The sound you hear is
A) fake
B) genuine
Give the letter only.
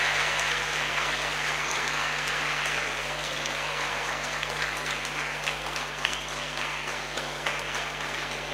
A